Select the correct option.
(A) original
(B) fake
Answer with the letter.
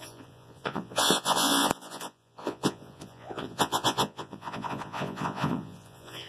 B